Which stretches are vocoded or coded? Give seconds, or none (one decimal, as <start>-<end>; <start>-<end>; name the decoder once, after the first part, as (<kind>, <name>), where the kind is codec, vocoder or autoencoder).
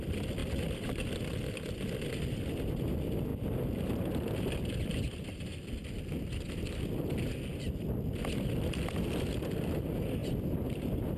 none